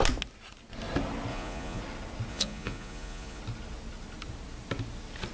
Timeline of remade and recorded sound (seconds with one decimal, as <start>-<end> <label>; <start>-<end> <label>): 0.0-1.3 recorded; 1.3-1.8 remade; 1.8-2.3 recorded; 2.3-3.4 remade; 3.4-5.3 recorded